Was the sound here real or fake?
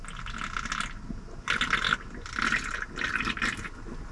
real